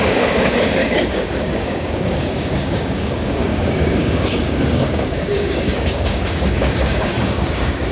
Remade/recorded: remade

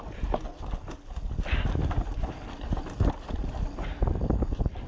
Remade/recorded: recorded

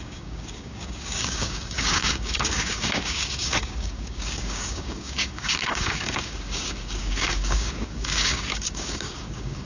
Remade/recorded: remade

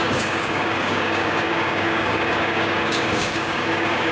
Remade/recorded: remade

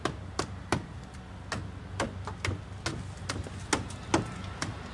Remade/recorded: recorded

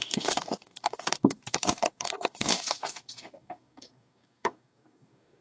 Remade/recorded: remade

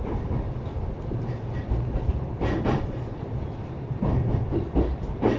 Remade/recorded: recorded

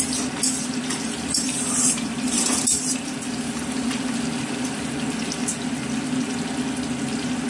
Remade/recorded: recorded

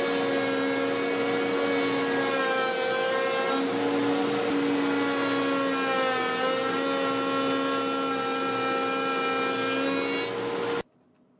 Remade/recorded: recorded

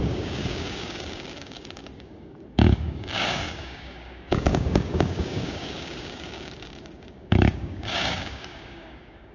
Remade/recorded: remade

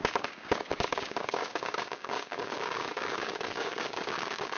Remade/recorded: remade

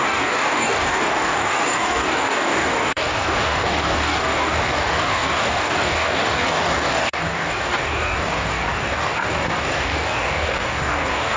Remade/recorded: remade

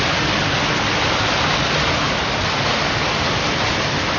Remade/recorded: recorded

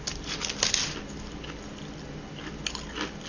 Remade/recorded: recorded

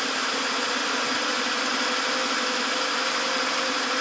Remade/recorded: recorded